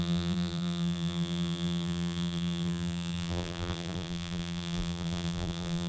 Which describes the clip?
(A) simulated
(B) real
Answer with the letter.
A